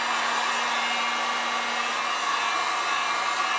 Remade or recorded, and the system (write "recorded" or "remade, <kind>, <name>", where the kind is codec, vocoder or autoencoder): recorded